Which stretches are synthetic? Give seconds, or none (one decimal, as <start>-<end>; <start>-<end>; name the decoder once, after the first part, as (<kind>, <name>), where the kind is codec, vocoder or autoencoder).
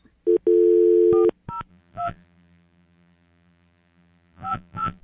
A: 1.7-5.0 (vocoder, BigVGAN v2)